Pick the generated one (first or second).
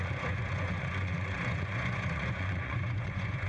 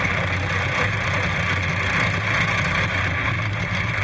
first